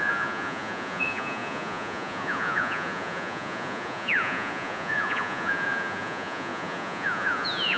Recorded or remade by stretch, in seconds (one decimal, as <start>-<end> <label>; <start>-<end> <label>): 0.0-7.8 remade